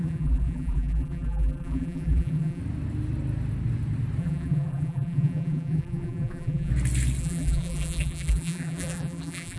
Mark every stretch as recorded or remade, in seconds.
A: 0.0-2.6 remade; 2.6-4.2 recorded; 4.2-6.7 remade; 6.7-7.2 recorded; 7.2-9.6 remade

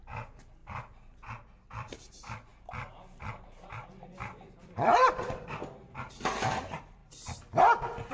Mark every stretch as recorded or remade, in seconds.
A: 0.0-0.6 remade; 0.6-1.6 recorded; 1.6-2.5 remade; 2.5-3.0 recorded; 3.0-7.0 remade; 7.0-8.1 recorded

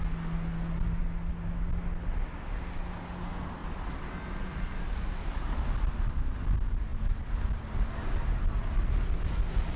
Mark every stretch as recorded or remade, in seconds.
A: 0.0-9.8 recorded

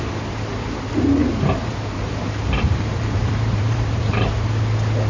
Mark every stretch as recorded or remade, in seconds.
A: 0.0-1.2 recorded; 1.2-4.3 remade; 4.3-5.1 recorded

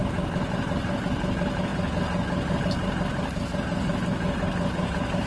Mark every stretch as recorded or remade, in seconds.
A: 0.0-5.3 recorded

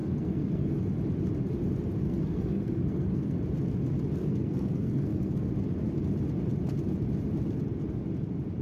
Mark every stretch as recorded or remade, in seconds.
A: 0.0-0.7 remade; 0.7-2.0 recorded; 2.0-3.4 remade; 3.4-4.2 recorded; 4.2-5.5 remade; 5.5-8.6 recorded

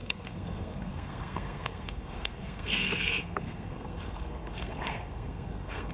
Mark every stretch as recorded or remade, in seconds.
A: 0.0-5.9 remade

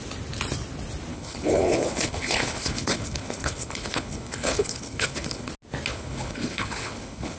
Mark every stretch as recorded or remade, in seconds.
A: 0.0-1.1 recorded; 1.1-5.5 remade; 5.5-5.9 recorded; 5.9-7.4 remade